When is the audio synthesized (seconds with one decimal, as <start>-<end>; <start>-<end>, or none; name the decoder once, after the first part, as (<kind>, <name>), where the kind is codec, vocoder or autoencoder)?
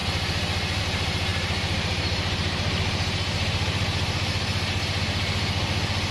0.8-6.1 (vocoder, BigVGAN v2)